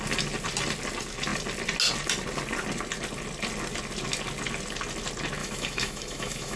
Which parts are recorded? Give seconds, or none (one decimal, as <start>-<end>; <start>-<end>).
0.0-5.4